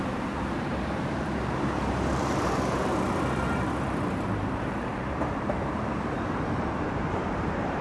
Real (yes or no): no